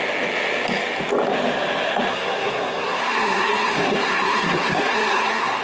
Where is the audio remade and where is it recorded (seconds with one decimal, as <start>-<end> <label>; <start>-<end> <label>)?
0.0-2.1 recorded; 2.1-5.6 remade